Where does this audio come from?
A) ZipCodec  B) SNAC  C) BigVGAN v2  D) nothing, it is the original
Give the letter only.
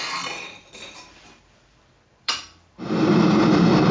C